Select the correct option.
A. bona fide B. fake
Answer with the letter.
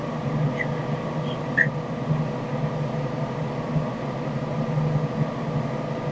A